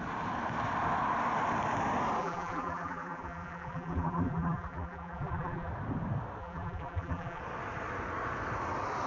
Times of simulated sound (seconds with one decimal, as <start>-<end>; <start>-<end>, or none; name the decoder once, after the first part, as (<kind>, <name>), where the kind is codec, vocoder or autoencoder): 2.2-5.7 (vocoder, BigVGAN v2); 6.4-7.4